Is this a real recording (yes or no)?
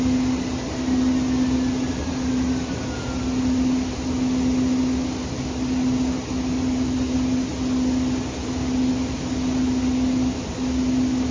yes